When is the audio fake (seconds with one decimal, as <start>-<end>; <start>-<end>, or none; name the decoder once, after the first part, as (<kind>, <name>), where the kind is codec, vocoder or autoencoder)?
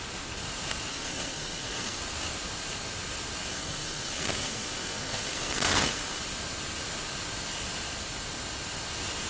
0.9-2.0 (codec, SNAC); 3.5-6.2